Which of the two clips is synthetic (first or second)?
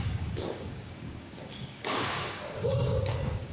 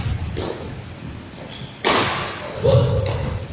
first